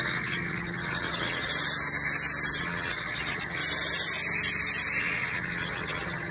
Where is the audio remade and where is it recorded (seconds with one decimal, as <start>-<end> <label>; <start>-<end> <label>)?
0.0-1.5 remade; 1.5-2.6 recorded; 2.6-3.6 remade; 3.6-5.0 recorded; 5.0-6.3 remade